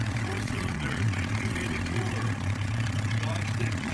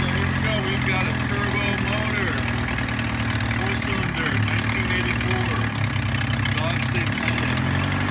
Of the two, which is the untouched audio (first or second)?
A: second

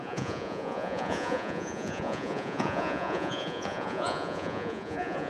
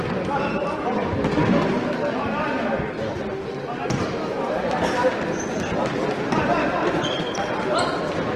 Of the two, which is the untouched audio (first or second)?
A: second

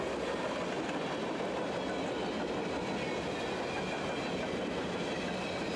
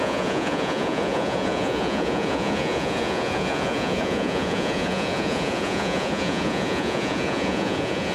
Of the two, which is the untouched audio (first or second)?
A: first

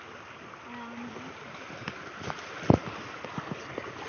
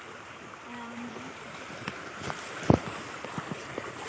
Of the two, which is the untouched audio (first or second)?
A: first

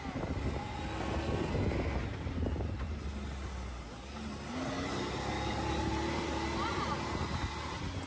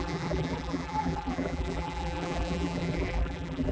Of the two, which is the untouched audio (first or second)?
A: first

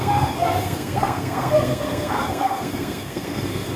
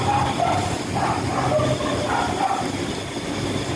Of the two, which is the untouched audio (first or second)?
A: second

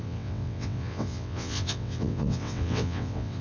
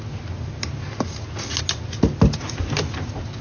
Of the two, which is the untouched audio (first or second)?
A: second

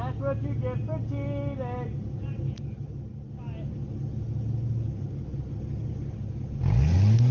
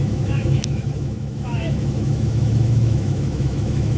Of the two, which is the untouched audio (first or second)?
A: first